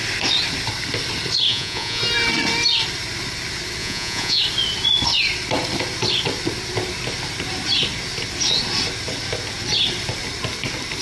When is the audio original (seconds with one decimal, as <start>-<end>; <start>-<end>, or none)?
0.0-1.5; 2.0-3.8; 4.4-11.0